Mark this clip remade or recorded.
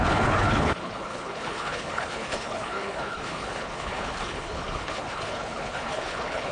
remade